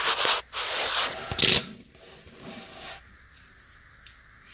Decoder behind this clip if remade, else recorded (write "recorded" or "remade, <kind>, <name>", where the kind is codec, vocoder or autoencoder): recorded